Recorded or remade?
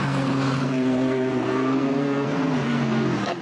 remade